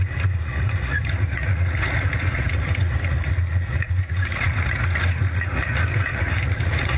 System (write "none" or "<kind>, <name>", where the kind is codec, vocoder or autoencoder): vocoder, Vocos